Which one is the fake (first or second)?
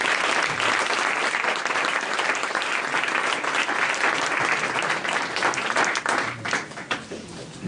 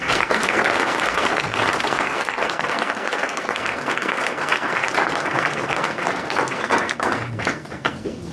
second